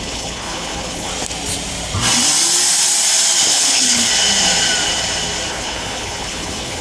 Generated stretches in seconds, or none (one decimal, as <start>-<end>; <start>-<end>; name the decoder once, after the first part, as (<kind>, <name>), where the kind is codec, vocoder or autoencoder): 0.0-1.1 (codec, HILCodec); 3.5-4.1; 5.5-6.8